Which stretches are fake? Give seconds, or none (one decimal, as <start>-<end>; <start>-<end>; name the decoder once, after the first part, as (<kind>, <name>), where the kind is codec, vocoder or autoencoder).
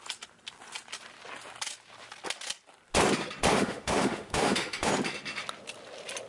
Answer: 3.5-4.9 (autoencoder, DAC-VAE)